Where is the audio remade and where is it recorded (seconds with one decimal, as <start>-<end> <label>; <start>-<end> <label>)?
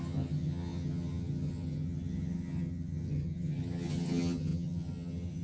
0.0-5.4 remade